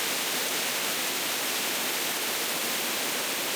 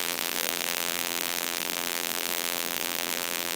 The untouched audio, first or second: first